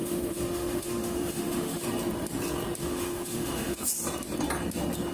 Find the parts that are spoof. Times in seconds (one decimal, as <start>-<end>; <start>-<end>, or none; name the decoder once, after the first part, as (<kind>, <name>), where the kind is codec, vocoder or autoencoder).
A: 0.0-1.8 (autoencoder, DAC-VAE); 2.8-3.9